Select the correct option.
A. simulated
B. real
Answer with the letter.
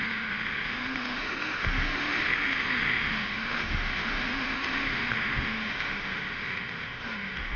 A